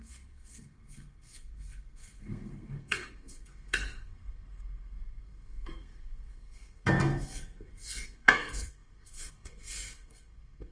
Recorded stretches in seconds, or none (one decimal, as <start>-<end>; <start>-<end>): none